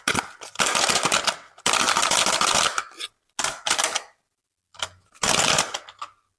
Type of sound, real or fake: real